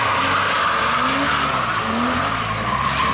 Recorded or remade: recorded